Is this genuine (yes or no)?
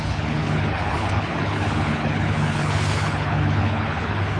no